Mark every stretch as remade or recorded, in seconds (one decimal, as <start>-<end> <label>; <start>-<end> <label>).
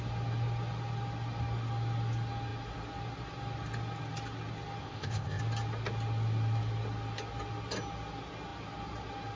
0.0-4.8 recorded; 4.8-5.4 remade; 5.4-9.4 recorded